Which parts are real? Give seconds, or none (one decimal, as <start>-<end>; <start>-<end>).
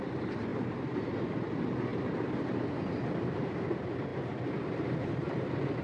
0.5-1.1; 1.9-3.0; 4.1-5.0